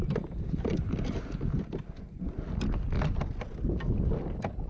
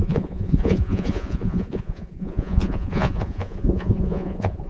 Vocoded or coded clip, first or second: second